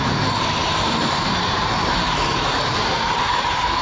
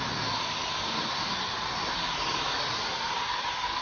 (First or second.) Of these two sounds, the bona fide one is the second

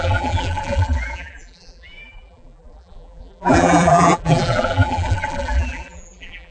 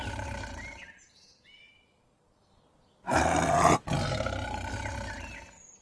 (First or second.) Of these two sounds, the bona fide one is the second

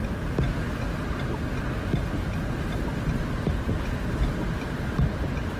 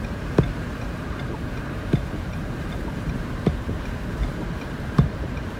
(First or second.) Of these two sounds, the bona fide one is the first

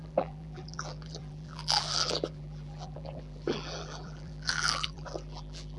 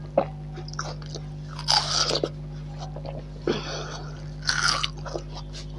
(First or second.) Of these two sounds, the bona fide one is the second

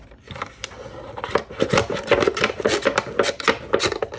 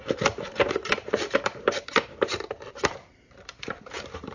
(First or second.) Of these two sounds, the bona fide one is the first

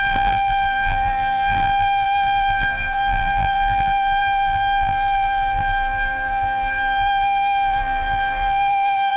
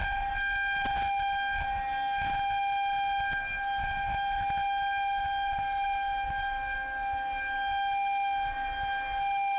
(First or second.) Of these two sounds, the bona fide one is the second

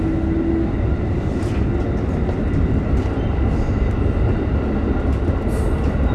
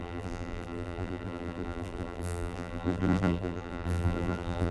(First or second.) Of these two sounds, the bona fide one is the first